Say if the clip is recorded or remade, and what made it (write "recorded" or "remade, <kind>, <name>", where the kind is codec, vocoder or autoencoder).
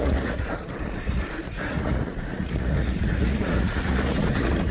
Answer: remade, vocoder, Vocos